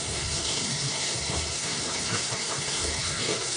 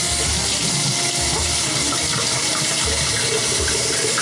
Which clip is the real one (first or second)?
second